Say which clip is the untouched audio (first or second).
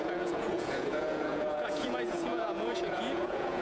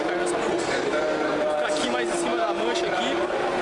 second